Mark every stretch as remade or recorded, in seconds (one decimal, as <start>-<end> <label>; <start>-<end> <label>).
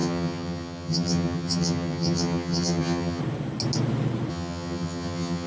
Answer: 0.0-3.2 remade; 3.2-4.3 recorded; 4.3-5.5 remade